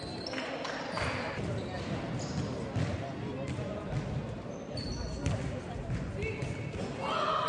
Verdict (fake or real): real